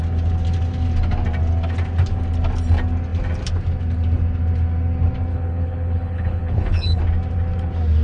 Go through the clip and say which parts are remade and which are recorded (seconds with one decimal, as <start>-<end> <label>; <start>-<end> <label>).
0.0-5.3 recorded; 5.3-7.0 remade; 7.0-8.0 recorded